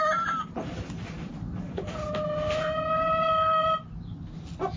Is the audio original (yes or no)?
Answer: yes